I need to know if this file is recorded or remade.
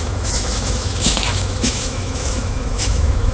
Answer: remade